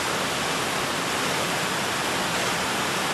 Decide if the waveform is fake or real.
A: real